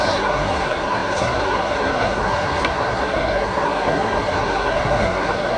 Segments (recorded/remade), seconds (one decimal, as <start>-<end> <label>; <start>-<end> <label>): 0.0-5.6 remade